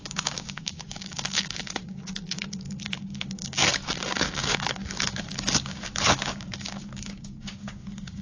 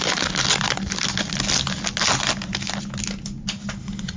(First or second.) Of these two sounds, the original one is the second